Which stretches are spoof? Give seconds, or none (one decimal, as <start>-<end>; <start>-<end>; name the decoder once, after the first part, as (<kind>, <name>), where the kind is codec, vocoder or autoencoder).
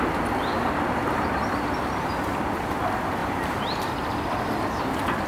3.2-3.9 (vocoder, BigVGAN v2)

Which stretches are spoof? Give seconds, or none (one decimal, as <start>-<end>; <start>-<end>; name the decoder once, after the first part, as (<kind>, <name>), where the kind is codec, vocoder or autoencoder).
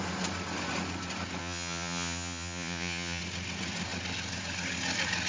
1.4-3.2 (vocoder, Vocos)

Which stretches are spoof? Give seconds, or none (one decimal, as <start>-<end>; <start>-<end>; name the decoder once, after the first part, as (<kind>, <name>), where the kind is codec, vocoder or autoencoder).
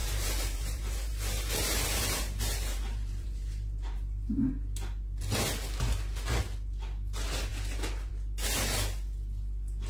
0.0-4.5 (vocoder, BigVGAN v2)